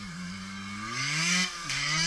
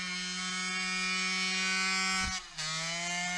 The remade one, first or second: first